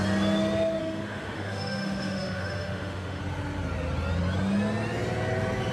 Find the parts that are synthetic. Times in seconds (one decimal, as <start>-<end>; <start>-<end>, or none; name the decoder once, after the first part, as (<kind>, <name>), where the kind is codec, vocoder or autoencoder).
0.8-3.2 (autoencoder, DAC-VAE)